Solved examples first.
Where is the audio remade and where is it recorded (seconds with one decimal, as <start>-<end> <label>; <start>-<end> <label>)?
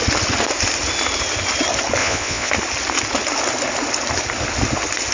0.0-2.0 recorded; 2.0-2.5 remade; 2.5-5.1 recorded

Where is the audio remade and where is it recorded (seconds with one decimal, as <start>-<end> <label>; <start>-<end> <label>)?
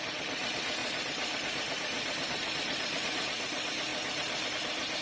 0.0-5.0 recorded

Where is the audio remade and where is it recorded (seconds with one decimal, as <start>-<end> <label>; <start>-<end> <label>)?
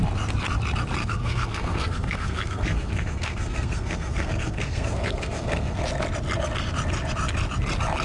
0.0-1.0 recorded; 1.0-5.8 remade; 5.8-8.0 recorded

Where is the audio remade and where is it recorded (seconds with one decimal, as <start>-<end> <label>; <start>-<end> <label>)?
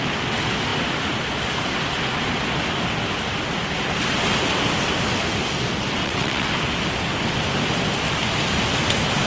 0.0-6.0 recorded; 6.0-6.5 remade; 6.5-9.3 recorded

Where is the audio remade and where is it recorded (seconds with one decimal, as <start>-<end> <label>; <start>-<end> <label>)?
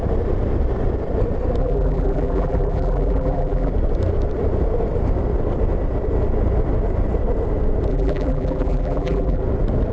0.0-1.6 recorded; 1.6-3.7 remade; 3.7-7.9 recorded; 7.9-9.4 remade; 9.4-9.9 recorded